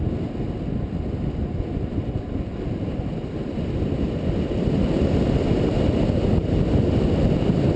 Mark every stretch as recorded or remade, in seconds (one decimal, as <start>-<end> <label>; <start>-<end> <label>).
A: 0.0-7.8 recorded